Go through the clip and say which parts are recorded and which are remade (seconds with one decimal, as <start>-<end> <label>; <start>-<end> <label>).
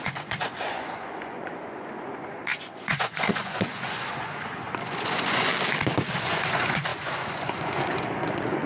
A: 0.0-5.5 remade; 5.5-6.2 recorded; 6.2-8.7 remade